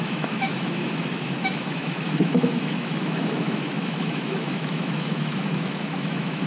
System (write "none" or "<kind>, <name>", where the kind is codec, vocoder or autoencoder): autoencoder, DAC-VAE